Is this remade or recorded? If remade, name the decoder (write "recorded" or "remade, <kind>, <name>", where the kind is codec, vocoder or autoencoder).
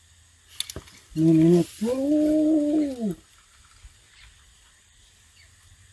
recorded